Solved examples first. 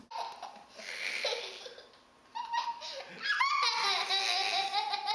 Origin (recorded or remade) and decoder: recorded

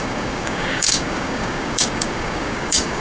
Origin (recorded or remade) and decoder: remade, codec, DAC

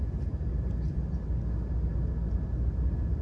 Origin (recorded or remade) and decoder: recorded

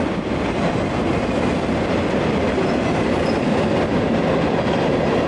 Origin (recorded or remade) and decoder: recorded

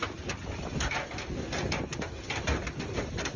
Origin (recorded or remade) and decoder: recorded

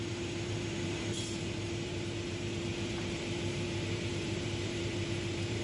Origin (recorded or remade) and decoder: remade, vocoder, BigVGAN v2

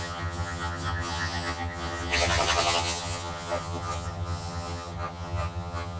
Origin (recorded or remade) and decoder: remade, vocoder, HiFi-GAN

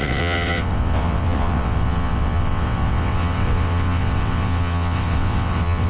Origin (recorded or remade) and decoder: remade, vocoder, WaveNeXt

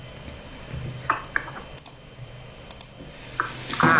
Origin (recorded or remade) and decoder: recorded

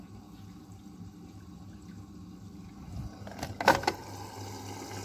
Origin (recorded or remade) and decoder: recorded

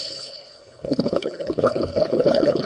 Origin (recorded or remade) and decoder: remade, codec, HILCodec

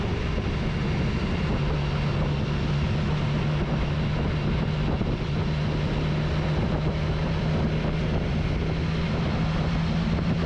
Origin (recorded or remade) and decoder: recorded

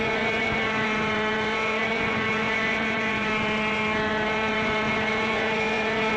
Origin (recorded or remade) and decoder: remade, vocoder, Vocos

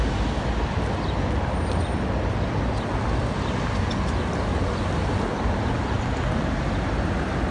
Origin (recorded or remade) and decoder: recorded